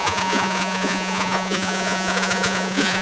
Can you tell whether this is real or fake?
fake